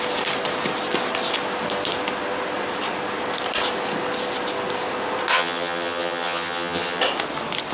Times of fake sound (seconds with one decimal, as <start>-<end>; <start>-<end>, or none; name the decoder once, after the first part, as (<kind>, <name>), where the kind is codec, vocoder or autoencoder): 5.3-7.0 (vocoder, HiFi-GAN)